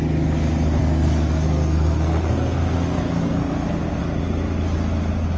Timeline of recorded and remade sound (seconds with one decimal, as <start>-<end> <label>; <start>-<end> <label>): 0.0-0.8 recorded; 0.8-4.0 remade; 4.0-5.4 recorded